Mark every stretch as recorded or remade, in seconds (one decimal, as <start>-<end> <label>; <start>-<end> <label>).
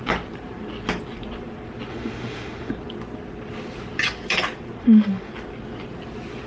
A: 0.0-1.9 recorded; 1.9-2.7 remade; 2.7-4.8 recorded; 4.8-5.3 remade; 5.3-6.5 recorded